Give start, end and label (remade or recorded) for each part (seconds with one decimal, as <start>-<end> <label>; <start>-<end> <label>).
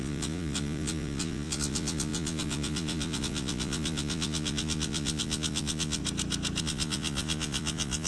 0.0-6.0 remade; 6.0-6.6 recorded; 6.6-8.1 remade